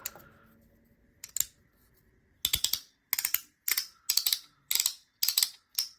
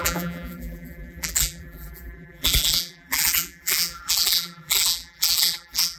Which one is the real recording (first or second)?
first